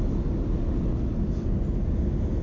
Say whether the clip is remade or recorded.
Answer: recorded